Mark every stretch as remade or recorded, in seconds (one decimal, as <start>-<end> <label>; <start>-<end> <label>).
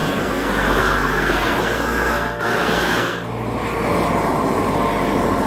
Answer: 0.0-3.3 remade; 3.3-5.5 recorded